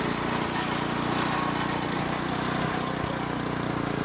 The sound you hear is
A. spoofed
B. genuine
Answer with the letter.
B